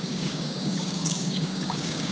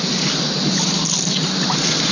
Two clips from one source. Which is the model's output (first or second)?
first